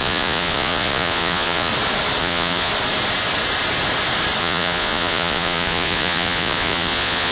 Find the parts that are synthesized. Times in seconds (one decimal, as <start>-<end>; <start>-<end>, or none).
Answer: 0.0-1.7; 2.2-2.7; 4.4-7.3